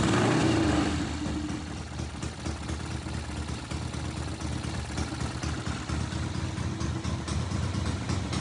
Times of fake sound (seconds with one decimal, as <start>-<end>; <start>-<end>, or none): none